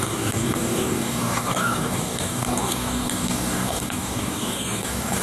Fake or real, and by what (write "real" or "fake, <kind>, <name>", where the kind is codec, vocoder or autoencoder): fake, codec, DAC